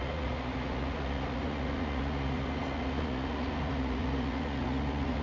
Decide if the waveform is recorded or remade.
remade